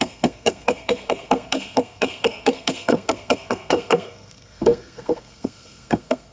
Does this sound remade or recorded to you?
remade